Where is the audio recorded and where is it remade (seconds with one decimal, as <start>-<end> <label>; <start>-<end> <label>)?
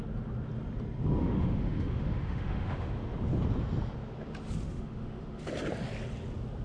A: 0.0-1.2 recorded; 1.2-2.9 remade; 2.9-4.7 recorded; 4.7-5.4 remade; 5.4-6.6 recorded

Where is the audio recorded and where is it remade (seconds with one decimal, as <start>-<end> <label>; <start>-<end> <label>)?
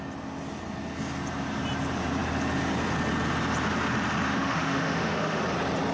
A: 0.0-4.3 recorded; 4.3-5.4 remade; 5.4-5.9 recorded